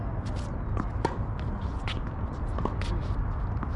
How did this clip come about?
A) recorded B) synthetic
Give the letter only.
A